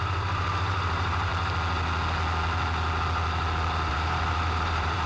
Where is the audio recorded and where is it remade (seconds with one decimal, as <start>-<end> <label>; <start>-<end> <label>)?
0.0-1.3 remade; 1.3-3.9 recorded; 3.9-5.1 remade